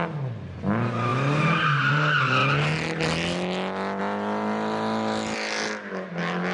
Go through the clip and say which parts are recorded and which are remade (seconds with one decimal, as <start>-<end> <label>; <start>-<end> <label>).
0.0-6.5 recorded